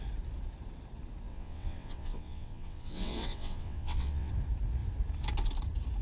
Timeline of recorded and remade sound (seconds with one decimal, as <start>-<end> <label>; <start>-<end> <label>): 0.0-1.3 recorded; 1.3-4.3 remade; 4.3-6.0 recorded